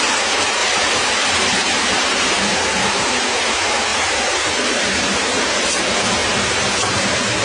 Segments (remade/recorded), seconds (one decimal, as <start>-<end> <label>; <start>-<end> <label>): 0.0-0.6 recorded; 0.6-2.3 remade; 2.3-3.9 recorded; 3.9-5.8 remade; 5.8-6.2 recorded; 6.2-6.7 remade; 6.7-7.4 recorded